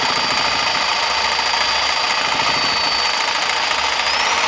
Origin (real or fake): real